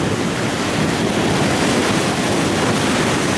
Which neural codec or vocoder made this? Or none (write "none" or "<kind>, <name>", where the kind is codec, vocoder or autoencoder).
none